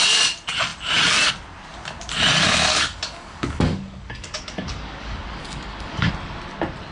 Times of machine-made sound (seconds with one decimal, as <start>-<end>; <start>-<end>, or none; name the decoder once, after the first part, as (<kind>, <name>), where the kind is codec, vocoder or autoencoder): 2.7-6.1 (codec, DAC)